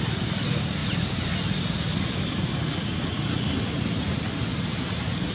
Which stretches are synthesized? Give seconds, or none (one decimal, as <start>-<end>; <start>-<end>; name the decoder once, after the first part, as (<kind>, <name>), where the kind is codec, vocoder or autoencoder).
none